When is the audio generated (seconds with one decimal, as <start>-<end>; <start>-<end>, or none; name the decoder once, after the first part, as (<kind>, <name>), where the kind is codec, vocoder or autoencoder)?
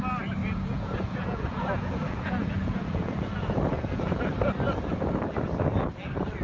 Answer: 0.4-4.2 (vocoder, Vocos)